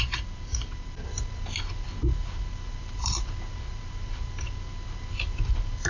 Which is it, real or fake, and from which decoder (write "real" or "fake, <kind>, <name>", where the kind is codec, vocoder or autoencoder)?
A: fake, vocoder, BigVGAN v2